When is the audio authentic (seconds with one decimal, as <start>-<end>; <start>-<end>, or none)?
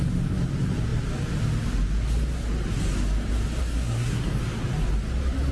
0.0-3.6; 4.3-5.5